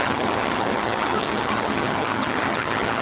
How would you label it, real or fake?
fake